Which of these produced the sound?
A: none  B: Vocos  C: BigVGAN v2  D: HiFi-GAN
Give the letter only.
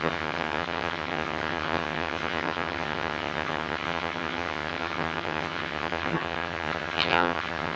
D